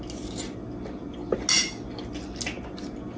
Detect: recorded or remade recorded